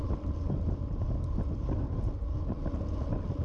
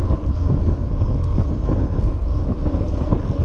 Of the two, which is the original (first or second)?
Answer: first